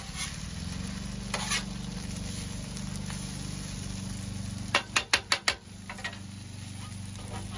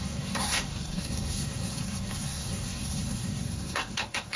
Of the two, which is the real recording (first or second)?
first